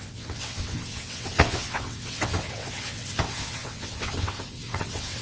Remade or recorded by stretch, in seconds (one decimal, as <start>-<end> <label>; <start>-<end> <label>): 0.0-5.2 remade